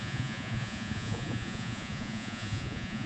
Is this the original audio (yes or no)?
no